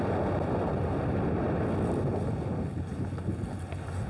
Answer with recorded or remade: recorded